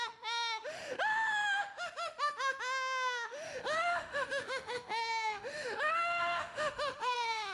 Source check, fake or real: fake